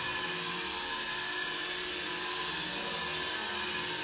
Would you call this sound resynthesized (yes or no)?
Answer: no